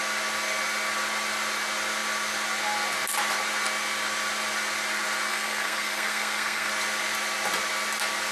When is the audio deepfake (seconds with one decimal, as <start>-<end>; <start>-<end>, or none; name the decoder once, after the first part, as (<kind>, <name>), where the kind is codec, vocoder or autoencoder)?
5.3-6.7 (codec, SNAC)